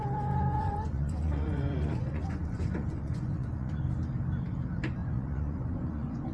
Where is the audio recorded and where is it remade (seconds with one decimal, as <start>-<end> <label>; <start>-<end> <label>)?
0.0-0.6 recorded; 0.6-3.8 remade; 3.8-5.0 recorded; 5.0-6.3 remade